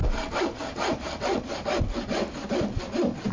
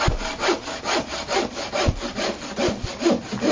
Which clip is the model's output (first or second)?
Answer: first